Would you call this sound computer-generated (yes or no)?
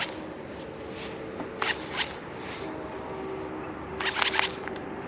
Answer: no